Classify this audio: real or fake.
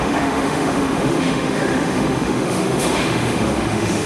fake